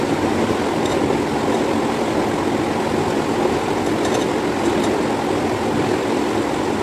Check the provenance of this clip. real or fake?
real